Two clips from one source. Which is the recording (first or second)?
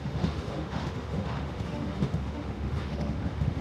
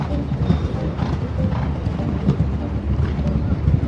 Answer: second